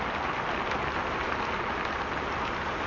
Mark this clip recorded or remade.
recorded